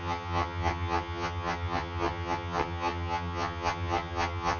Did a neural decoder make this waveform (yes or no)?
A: yes